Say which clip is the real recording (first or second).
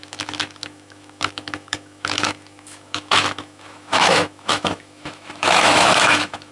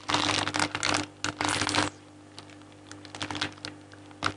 second